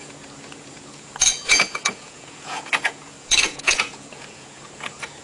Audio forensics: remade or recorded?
remade